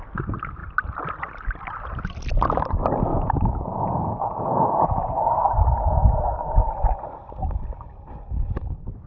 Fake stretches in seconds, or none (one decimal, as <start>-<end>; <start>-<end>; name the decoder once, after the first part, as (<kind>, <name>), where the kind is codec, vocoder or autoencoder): 3.1-5.1 (vocoder, Vocos)